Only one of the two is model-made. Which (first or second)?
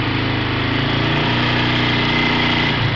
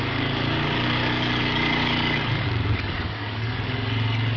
second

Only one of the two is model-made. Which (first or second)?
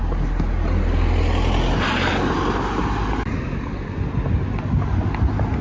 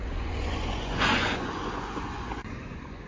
second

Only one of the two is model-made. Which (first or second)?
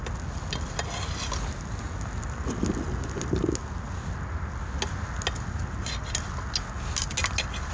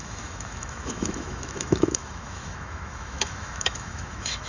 second